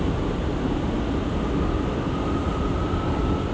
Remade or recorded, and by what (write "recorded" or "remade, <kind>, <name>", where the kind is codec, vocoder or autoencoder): recorded